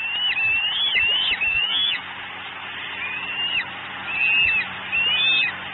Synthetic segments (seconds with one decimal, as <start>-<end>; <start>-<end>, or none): 1.5-2.0